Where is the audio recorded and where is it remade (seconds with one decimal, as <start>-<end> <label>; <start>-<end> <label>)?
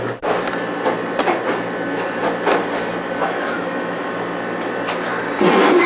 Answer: 0.0-3.2 recorded; 3.2-4.1 remade; 4.1-5.9 recorded